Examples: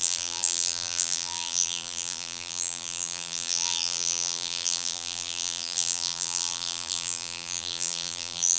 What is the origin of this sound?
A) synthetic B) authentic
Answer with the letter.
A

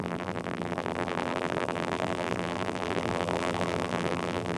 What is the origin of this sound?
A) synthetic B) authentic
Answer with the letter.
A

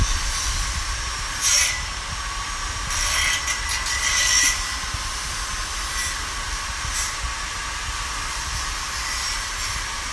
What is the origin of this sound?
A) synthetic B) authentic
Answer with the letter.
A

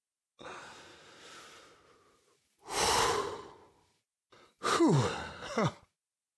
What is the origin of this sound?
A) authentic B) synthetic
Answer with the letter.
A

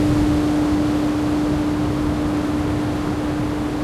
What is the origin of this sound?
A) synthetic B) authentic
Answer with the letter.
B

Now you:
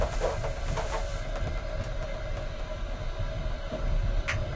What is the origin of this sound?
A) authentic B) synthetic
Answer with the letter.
B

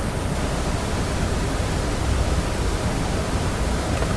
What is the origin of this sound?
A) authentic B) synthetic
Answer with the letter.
B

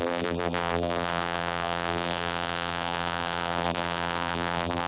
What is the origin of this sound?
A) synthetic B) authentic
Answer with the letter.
A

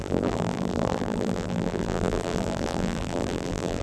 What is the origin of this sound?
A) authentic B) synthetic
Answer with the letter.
B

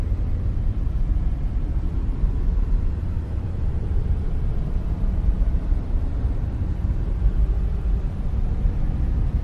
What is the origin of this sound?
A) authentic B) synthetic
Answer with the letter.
B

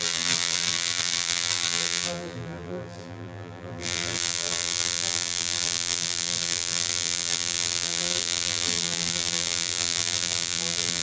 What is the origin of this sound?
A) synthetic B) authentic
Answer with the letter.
A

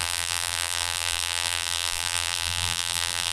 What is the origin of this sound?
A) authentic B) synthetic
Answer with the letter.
B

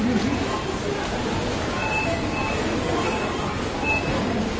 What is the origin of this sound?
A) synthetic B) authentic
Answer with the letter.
A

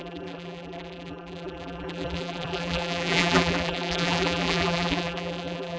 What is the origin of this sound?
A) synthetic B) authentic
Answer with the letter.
A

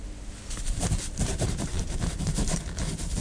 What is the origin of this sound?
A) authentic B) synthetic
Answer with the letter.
B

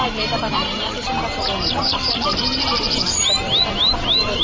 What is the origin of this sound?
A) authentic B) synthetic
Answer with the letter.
B